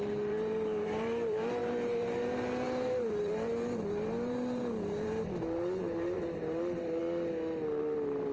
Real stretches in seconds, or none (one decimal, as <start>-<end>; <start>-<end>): 7.0-7.8